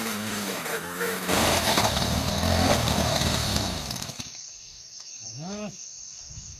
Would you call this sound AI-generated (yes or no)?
yes